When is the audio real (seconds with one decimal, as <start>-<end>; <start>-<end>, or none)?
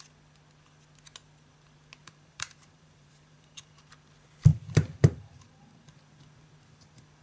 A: 0.0-2.0; 3.9-4.5; 5.9-7.2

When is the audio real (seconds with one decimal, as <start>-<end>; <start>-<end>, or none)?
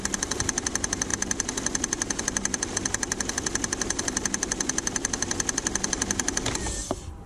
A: 0.0-7.3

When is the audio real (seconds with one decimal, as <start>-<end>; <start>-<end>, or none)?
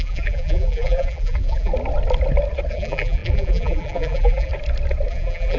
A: 1.7-2.7; 4.5-5.1